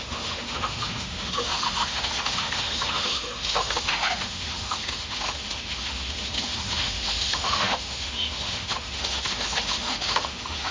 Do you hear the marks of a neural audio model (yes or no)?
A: yes